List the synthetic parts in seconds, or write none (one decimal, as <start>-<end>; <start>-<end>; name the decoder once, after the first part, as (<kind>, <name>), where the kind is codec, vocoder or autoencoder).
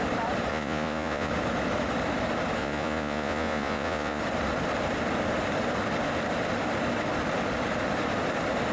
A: 0.5-1.3 (vocoder, Vocos); 2.6-4.2